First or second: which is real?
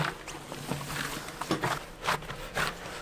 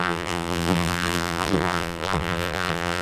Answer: first